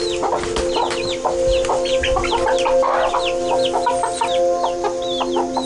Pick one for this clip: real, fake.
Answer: real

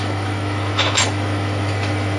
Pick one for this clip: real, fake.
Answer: fake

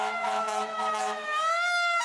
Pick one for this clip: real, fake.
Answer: fake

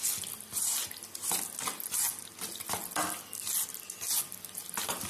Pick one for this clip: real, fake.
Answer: real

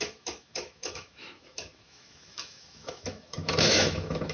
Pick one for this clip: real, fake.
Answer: fake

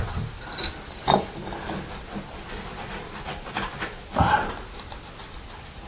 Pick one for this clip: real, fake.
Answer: real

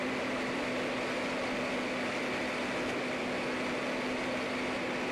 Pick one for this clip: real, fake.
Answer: real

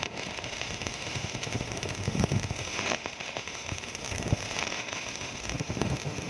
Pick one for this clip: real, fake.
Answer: fake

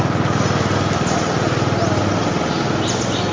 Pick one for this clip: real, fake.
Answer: real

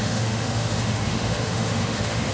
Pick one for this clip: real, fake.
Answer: fake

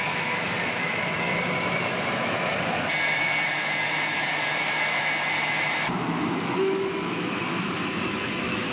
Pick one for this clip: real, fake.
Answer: fake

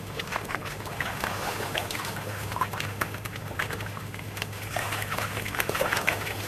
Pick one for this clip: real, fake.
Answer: fake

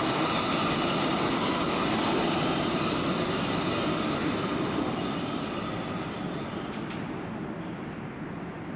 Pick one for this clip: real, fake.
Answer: real